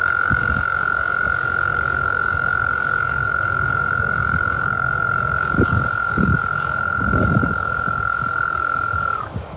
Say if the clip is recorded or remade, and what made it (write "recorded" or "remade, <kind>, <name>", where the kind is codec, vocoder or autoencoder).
remade, codec, DAC